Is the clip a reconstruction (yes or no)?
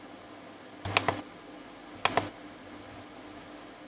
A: no